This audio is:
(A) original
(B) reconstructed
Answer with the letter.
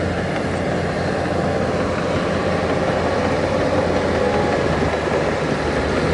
A